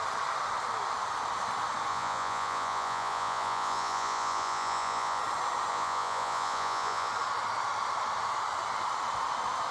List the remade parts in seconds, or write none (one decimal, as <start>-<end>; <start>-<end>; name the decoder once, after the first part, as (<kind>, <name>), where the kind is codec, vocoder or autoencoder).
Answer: 1.9-5.2 (vocoder, Vocos); 5.7-7.1